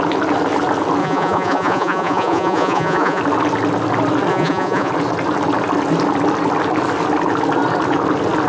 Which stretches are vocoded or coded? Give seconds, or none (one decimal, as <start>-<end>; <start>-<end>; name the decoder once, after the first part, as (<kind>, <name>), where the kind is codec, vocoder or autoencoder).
1.0-3.2 (vocoder, Vocos); 4.3-4.9